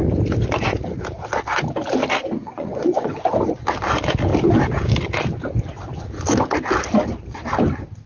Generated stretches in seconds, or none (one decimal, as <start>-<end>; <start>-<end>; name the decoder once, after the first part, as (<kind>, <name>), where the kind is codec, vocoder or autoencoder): 2.4-3.1 (vocoder, Vocos)